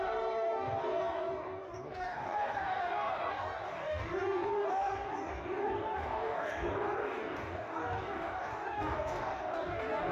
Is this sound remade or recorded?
remade